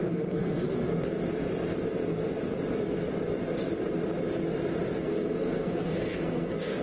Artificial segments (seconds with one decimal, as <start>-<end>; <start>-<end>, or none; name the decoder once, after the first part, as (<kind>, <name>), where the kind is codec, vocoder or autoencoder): 0.0-0.9 (codec, SNAC); 5.0-6.8